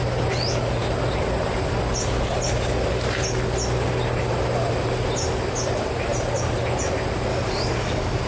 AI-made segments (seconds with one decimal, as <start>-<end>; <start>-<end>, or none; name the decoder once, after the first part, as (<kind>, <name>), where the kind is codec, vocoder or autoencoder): 7.3-8.3 (codec, DAC)